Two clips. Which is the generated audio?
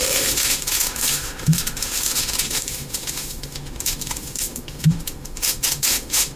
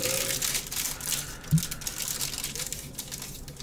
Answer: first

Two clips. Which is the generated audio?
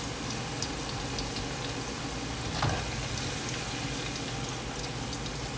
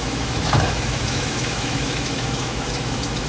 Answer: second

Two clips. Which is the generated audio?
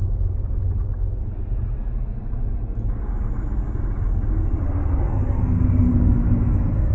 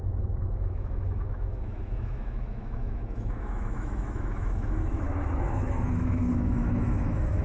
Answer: second